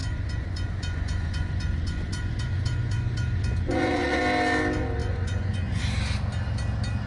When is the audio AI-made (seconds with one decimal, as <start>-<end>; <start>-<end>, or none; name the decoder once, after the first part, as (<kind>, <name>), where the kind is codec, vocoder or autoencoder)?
0.0-4.2 (vocoder, Vocos); 5.0-5.8